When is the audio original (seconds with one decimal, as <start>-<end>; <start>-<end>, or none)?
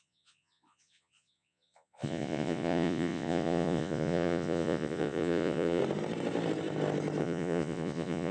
5.8-7.2